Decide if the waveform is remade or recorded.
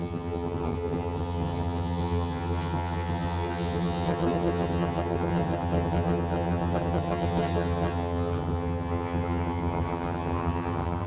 remade